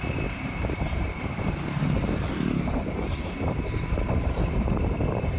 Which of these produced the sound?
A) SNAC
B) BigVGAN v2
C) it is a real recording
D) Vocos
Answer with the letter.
B